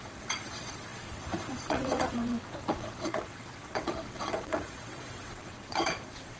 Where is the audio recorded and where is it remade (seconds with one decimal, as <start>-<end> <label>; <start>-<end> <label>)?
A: 0.0-6.4 remade